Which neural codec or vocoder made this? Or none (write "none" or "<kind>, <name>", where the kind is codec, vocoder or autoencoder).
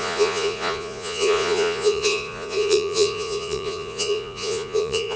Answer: vocoder, Vocos